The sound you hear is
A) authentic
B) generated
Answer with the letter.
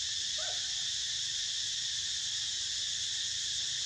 A